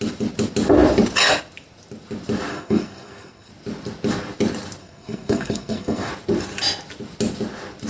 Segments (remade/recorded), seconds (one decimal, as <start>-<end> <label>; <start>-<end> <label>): 0.0-2.5 recorded; 2.5-3.5 remade; 3.5-4.8 recorded; 4.8-6.1 remade; 6.1-7.9 recorded